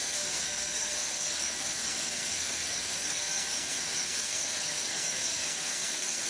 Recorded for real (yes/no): no